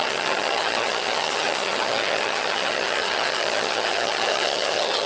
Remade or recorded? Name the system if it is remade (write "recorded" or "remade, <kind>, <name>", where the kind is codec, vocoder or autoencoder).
remade, vocoder, HiFi-GAN